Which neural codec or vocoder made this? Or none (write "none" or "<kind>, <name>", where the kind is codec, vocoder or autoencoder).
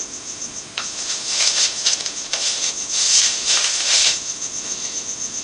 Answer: autoencoder, DAC-VAE